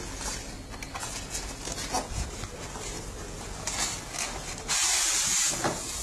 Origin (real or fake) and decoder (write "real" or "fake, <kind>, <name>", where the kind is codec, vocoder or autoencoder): real